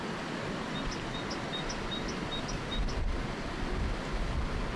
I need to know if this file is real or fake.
real